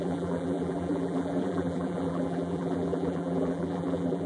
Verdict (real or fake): fake